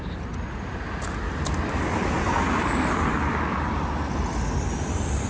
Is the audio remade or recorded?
recorded